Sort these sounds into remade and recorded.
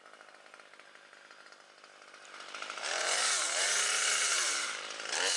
recorded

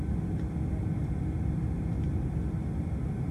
recorded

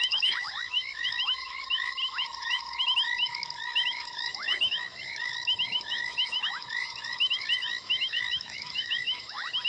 remade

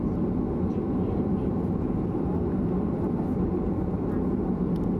recorded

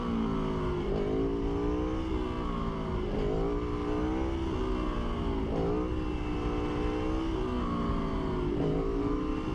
recorded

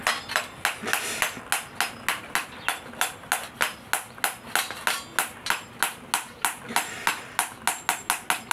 recorded